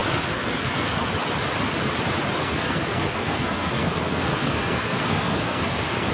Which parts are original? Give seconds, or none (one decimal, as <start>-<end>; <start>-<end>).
1.1-2.4